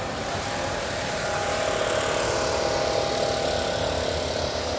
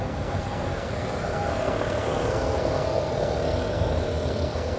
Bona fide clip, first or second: first